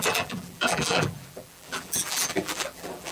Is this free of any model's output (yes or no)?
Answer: no